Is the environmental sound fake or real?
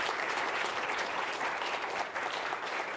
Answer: fake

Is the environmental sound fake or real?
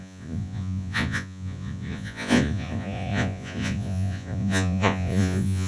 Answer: fake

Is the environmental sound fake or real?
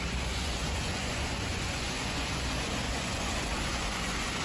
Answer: fake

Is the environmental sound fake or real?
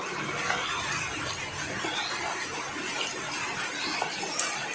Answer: real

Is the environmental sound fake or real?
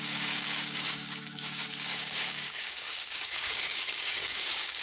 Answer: fake